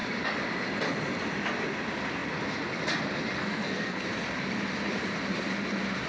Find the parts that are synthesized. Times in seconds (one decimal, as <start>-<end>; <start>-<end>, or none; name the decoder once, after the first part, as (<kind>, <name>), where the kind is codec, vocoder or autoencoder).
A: 3.4-4.0 (codec, SNAC)